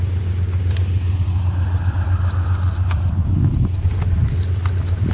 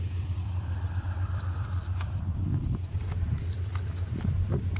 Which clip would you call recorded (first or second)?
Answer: first